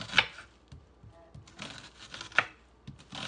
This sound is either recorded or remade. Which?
recorded